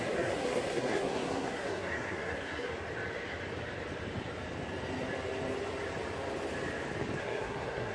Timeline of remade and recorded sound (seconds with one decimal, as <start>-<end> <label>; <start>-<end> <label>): 0.0-2.7 remade; 2.7-7.2 recorded; 7.2-7.9 remade